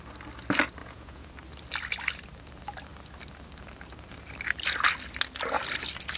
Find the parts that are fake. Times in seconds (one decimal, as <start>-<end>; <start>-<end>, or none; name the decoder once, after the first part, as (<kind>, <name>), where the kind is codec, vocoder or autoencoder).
0.8-1.3 (vocoder, Vocos)